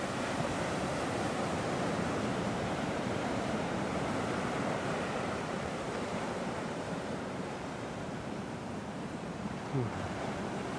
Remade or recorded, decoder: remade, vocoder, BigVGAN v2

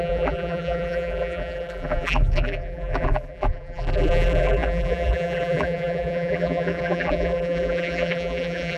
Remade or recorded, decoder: remade, vocoder, BigVGAN v2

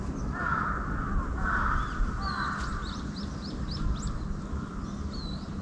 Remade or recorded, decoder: recorded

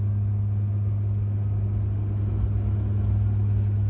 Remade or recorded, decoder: recorded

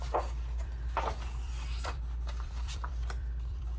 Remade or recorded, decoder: remade, vocoder, BigVGAN v2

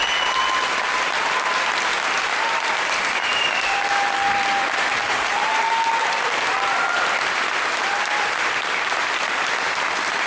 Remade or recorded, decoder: remade, vocoder, BigVGAN v2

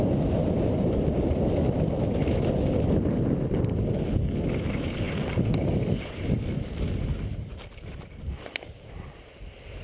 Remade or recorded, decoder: recorded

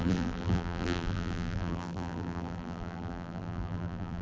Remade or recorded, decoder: remade, vocoder, BigVGAN v2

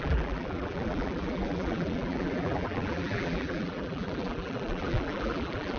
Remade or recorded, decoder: remade, vocoder, BigVGAN v2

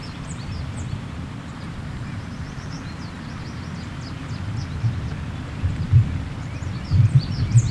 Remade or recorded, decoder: remade, vocoder, BigVGAN v2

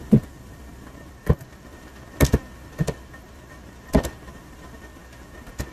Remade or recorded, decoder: remade, vocoder, BigVGAN v2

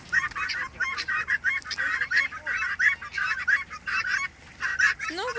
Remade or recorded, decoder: recorded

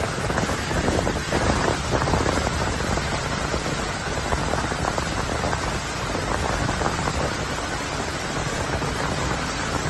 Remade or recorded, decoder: recorded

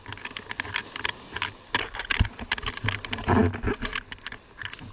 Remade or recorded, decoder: recorded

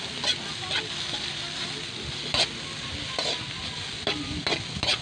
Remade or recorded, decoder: recorded